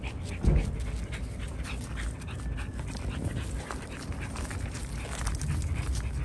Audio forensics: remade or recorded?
recorded